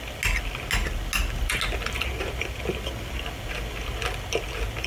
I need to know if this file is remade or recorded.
recorded